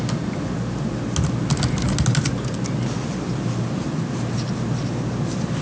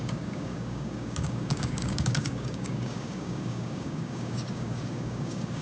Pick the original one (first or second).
first